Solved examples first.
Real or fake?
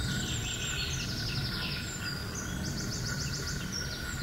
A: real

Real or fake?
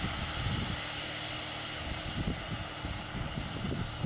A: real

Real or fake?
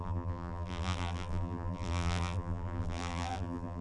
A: fake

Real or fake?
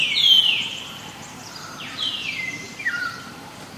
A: fake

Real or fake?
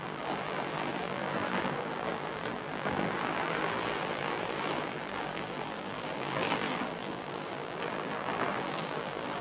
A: fake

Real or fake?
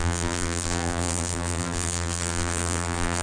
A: fake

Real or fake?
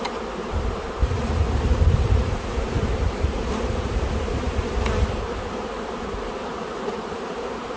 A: fake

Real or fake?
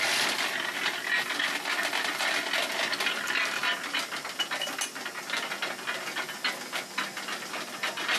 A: real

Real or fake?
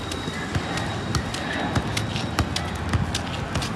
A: real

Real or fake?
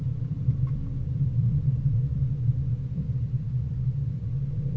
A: fake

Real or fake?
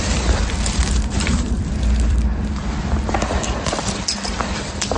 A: fake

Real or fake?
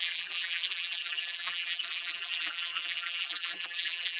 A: fake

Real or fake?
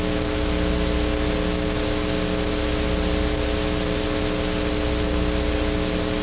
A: real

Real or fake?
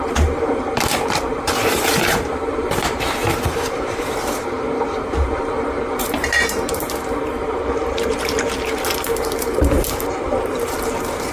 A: fake